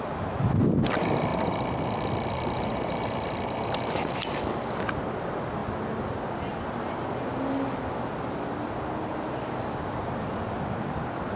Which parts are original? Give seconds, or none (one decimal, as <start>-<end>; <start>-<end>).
0.0-11.4